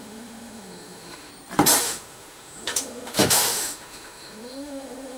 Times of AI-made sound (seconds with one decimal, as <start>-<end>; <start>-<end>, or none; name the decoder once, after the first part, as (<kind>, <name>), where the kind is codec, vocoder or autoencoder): 0.0-1.3 (autoencoder, DAC-VAE); 1.8-5.2

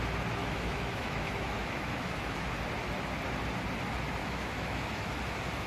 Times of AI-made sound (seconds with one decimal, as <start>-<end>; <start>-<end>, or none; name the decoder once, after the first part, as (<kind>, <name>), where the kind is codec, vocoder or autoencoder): 0.4-2.5 (autoencoder, DAC-VAE); 4.2-5.2

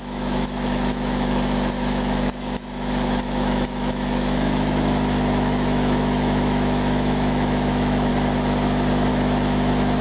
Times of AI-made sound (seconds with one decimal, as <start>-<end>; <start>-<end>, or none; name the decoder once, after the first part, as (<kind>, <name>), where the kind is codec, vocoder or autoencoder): 0.0-8.1 (autoencoder, DAC-VAE); 9.1-10.0

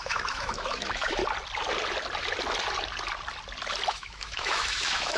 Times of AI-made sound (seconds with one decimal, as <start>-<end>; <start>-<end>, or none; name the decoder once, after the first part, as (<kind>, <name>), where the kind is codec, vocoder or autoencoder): 0.0-1.2 (autoencoder, DAC-VAE); 3.9-5.2

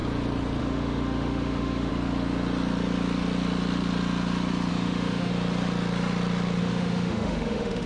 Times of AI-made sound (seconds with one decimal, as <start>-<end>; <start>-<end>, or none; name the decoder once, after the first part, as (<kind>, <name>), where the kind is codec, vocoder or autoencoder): 0.6-1.9 (autoencoder, DAC-VAE); 4.7-5.3; 6.6-7.9

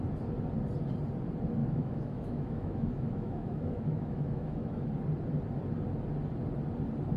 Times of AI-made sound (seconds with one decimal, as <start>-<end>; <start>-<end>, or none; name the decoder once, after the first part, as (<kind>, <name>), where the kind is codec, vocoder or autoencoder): 1.6-4.9 (autoencoder, DAC-VAE)

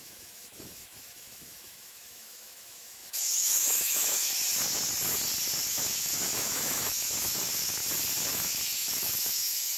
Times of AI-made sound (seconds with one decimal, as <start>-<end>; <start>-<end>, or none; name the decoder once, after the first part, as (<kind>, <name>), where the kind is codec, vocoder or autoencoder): 0.0-4.3 (autoencoder, DAC-VAE); 5.7-7.8; 8.3-9.8

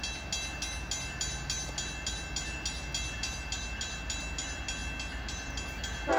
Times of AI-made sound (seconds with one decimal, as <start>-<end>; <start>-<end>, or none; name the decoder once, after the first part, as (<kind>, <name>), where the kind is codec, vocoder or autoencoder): none